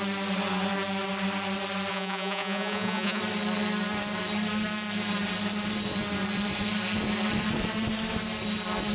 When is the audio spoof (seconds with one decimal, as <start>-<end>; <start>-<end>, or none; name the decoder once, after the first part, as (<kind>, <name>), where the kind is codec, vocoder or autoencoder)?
1.9-3.2 (vocoder, Vocos)